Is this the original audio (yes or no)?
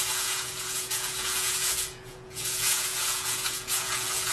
no